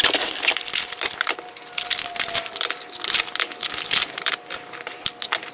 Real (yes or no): yes